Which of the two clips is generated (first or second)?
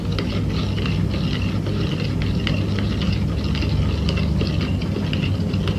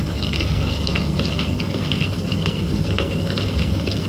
second